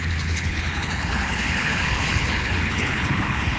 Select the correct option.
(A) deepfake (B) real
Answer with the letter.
A